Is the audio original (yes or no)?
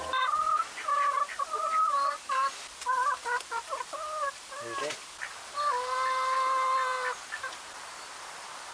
no